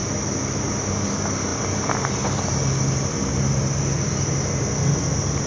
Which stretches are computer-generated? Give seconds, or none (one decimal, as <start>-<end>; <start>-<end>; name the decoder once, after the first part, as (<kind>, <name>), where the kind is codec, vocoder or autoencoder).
none